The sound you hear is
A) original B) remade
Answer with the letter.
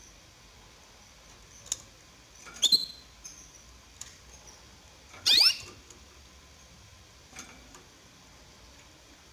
A